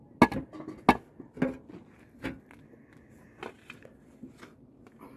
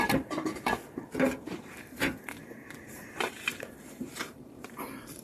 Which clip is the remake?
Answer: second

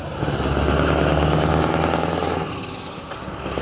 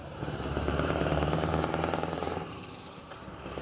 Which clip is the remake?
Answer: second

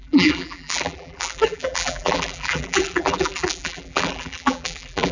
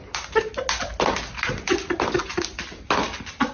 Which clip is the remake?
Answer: first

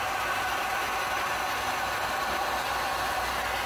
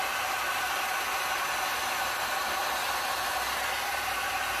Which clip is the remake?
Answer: second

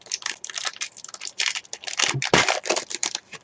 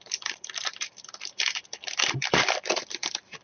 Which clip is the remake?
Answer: second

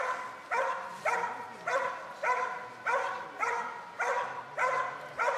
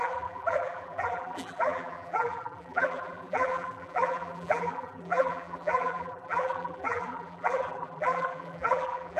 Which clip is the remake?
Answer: second